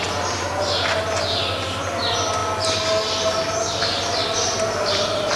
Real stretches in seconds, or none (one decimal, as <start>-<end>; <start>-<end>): 0.0-5.4